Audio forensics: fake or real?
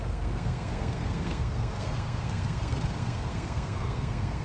fake